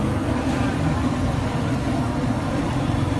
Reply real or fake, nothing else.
real